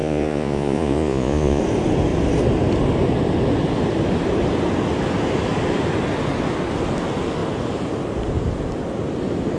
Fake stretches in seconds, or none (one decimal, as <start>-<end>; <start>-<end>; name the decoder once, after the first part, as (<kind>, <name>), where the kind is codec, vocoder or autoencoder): 0.0-1.6 (vocoder, Vocos)